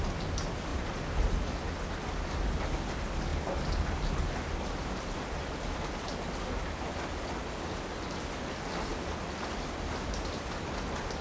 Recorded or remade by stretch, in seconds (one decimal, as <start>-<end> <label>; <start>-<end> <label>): 0.0-11.2 recorded